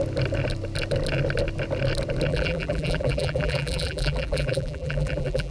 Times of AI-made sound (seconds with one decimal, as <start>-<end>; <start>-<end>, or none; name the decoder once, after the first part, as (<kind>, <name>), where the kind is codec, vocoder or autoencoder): 2.3-5.5 (vocoder, BigVGAN v2)